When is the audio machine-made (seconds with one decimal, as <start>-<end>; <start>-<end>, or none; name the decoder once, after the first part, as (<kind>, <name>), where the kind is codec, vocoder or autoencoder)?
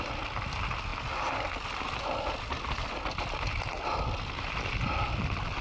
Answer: none